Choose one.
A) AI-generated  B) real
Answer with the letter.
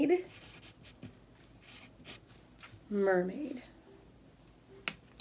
B